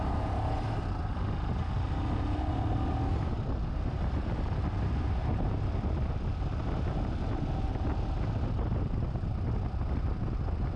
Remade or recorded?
recorded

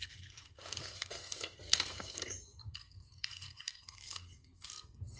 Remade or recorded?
remade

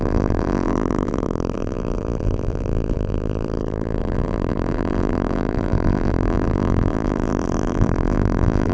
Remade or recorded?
remade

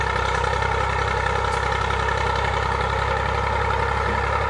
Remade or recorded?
recorded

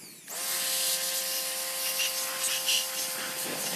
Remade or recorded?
recorded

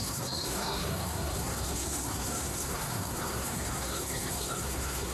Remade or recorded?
remade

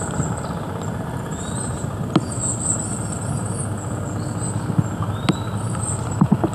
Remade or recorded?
recorded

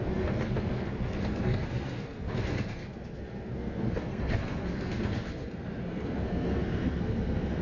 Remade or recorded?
remade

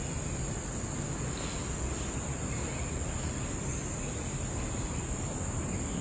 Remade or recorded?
recorded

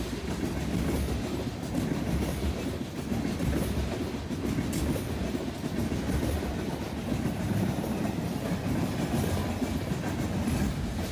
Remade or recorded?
recorded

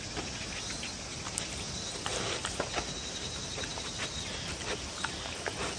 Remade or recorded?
recorded